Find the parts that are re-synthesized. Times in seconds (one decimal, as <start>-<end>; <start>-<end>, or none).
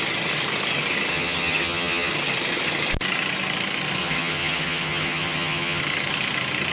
1.1-2.1; 4.0-5.8